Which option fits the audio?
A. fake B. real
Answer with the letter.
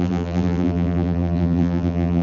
A